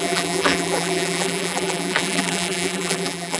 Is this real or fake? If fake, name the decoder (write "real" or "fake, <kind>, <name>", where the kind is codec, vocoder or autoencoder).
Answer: fake, vocoder, BigVGAN v2